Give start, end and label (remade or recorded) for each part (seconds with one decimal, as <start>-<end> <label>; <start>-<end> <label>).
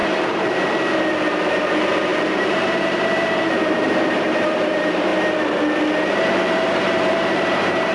0.0-1.5 recorded; 1.5-5.1 remade; 5.1-6.1 recorded; 6.1-7.9 remade